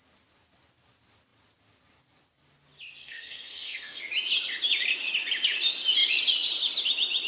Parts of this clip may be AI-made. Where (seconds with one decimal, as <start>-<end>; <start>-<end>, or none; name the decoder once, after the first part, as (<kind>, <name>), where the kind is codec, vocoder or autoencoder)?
3.0-4.0 (codec, SNAC)